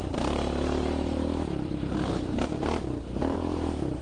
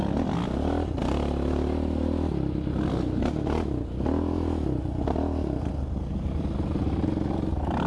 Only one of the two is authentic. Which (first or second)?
second